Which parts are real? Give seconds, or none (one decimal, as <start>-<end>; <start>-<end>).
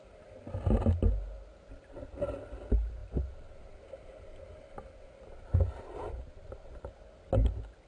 0.0-7.9